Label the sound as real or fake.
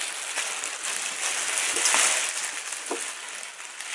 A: real